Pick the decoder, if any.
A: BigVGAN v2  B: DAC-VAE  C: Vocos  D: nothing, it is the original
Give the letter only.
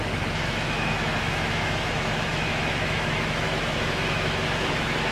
B